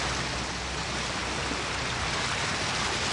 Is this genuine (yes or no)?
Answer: yes